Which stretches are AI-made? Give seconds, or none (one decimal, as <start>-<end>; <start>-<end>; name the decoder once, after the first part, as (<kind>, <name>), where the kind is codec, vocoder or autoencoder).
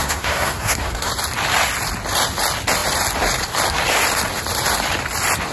0.0-1.1 (codec, SNAC)